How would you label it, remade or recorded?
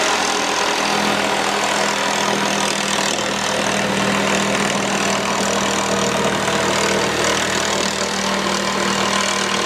recorded